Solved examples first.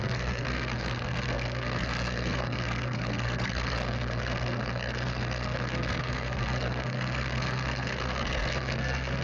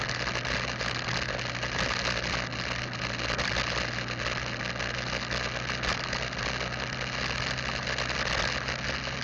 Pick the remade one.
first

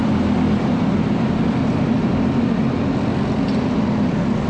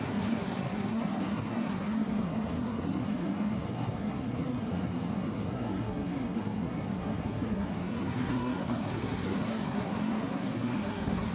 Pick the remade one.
second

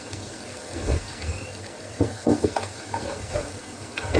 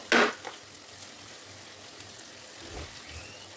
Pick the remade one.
first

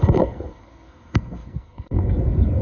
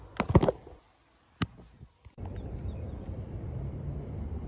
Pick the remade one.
first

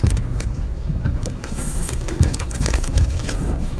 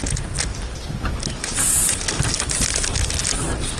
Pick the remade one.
first